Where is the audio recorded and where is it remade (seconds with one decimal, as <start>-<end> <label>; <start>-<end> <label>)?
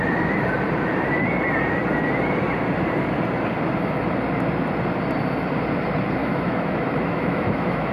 0.0-6.2 recorded; 6.2-7.9 remade